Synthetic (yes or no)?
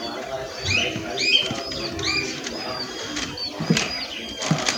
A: yes